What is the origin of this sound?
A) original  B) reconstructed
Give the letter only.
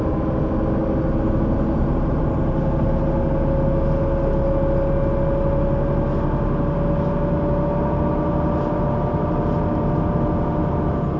A